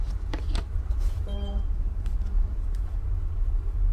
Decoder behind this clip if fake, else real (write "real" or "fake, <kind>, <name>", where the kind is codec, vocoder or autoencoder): fake, vocoder, BigVGAN v2